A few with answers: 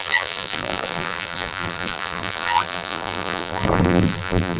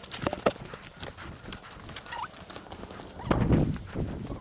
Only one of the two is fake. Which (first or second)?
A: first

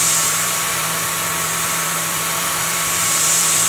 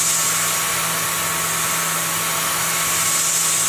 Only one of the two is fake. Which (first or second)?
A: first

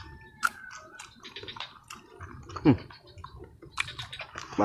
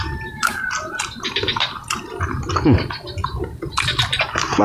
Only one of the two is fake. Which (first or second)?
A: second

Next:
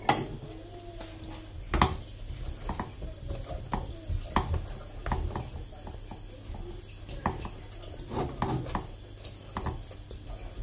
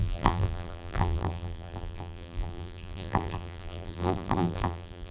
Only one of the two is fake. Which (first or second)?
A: second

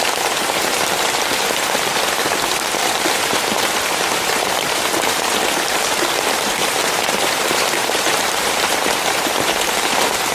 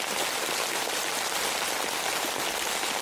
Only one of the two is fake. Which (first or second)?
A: first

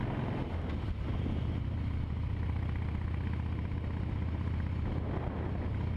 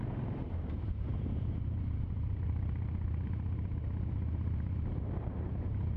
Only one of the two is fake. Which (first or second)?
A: second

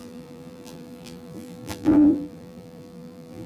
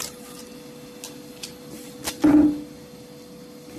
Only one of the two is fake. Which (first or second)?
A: first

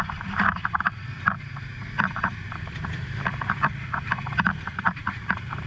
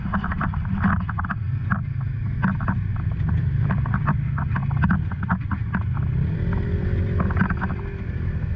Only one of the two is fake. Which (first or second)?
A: first